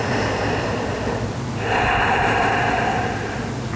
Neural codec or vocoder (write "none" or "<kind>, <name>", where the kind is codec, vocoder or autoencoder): none